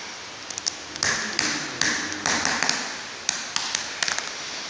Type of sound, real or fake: real